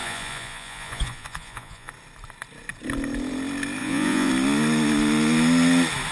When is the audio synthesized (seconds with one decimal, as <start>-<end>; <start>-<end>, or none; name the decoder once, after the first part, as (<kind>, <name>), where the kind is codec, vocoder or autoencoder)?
0.0-1.9 (vocoder, Vocos); 3.8-4.3